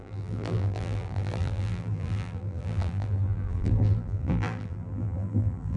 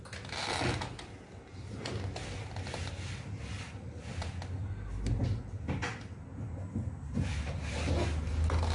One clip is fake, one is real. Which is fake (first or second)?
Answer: first